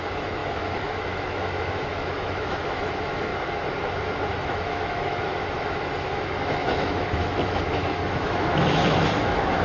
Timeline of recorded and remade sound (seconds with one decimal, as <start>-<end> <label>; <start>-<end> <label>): 0.0-3.3 remade; 3.3-4.3 recorded; 4.3-9.6 remade